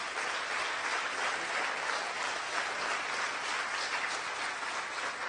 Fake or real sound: real